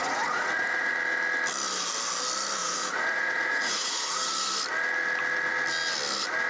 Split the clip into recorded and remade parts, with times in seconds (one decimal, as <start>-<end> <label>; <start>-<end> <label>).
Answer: 0.0-0.9 remade; 0.9-2.6 recorded; 2.6-4.3 remade; 4.3-6.5 recorded